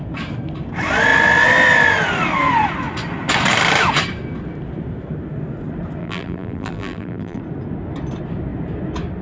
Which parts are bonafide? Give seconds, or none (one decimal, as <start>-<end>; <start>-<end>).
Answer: 0.0-6.0; 7.4-9.2

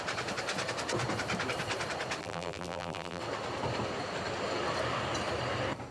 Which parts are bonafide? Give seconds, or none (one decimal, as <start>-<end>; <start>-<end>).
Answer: 0.0-2.2; 3.2-5.9

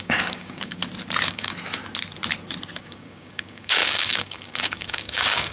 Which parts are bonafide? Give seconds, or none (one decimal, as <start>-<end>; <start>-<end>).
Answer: 0.8-1.3; 1.8-2.8

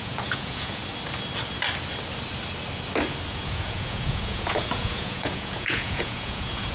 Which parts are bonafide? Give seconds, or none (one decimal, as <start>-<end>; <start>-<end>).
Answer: 0.8-3.3